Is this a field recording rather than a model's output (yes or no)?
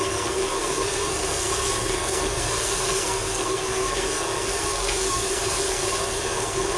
no